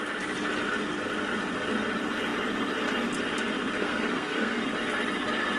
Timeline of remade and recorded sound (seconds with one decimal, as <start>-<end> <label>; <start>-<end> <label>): 0.0-3.8 recorded; 3.8-4.6 remade; 4.6-5.6 recorded